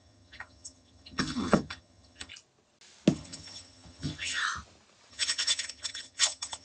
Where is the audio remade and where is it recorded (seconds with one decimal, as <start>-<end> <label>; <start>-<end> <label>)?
0.0-2.3 remade; 2.3-3.1 recorded; 3.1-4.4 remade; 4.4-5.1 recorded; 5.1-6.6 remade